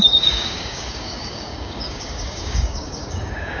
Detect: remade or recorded remade